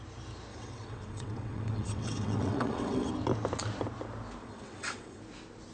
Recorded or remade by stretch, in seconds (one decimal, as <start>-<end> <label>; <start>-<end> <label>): 0.0-0.5 recorded; 0.5-3.1 remade; 3.1-4.4 recorded; 4.4-5.2 remade; 5.2-5.7 recorded